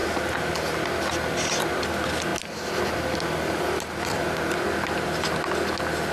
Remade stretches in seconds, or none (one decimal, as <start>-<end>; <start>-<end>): none